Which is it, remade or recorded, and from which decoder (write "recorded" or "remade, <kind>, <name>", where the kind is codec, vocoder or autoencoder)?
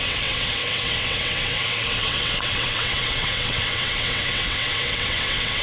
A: remade, vocoder, WaveNeXt